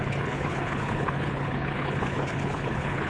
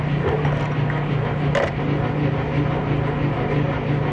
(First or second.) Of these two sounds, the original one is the second